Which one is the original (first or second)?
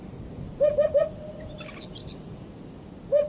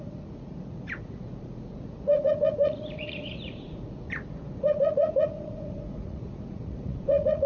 first